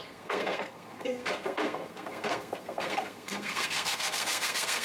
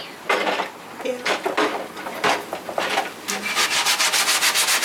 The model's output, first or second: first